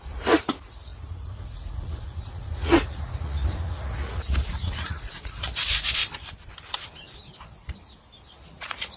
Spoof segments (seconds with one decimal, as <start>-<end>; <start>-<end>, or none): 0.0-6.0; 8.5-9.0